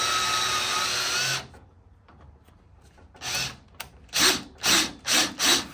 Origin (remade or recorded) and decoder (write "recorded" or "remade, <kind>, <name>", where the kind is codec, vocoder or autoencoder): recorded